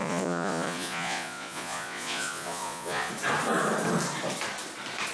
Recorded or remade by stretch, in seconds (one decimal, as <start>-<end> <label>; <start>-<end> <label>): 0.0-3.1 remade; 3.1-5.1 recorded